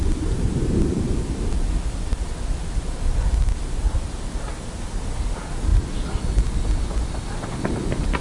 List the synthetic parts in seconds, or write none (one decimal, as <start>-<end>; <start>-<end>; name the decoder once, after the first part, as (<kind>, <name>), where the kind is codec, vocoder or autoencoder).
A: 5.7-6.2 (vocoder, BigVGAN v2)